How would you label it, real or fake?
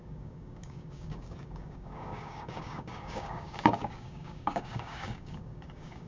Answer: fake